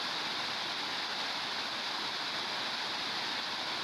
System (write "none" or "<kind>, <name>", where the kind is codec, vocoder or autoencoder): none